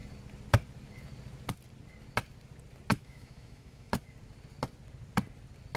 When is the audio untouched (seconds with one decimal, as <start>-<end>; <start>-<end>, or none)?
0.0-2.9; 3.9-5.8